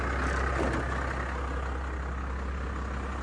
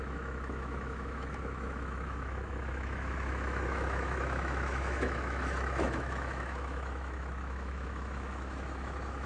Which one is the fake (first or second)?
second